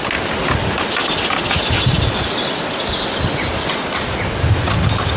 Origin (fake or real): real